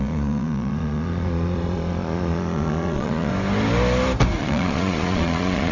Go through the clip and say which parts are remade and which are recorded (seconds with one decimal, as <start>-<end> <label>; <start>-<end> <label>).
0.0-3.3 remade; 3.3-4.4 recorded; 4.4-5.7 remade